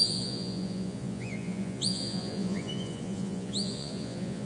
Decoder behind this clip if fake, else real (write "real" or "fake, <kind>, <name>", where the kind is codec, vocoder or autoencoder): fake, vocoder, Vocos